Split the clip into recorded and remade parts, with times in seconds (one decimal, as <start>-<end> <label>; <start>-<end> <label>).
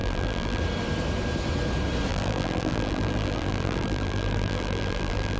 0.0-0.6 remade; 0.6-2.1 recorded; 2.1-5.4 remade